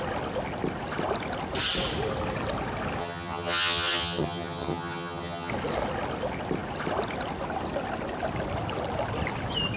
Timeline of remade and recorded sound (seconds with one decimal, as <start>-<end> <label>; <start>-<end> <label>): 0.0-3.0 recorded; 3.0-5.5 remade; 5.5-9.8 recorded